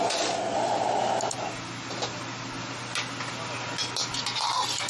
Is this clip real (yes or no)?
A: yes